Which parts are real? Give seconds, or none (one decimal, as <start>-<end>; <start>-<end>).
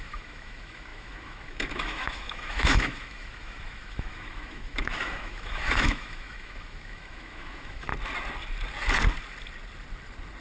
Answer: 7.9-10.4